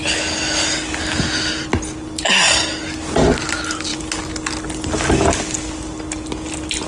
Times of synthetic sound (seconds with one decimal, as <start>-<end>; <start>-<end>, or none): none